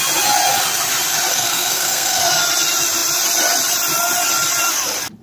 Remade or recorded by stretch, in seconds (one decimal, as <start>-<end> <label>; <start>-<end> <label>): 0.0-1.3 recorded; 1.3-2.2 remade; 2.2-5.2 recorded